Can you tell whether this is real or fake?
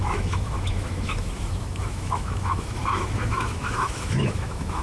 fake